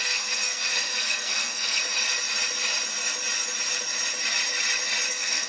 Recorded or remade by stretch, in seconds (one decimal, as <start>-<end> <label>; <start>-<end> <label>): 0.0-1.8 remade; 1.8-5.1 recorded; 5.1-5.5 remade